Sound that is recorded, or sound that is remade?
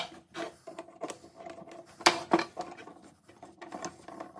recorded